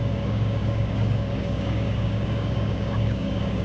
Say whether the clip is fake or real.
fake